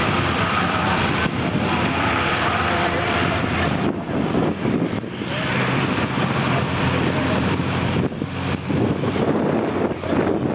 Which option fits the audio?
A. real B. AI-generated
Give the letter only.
B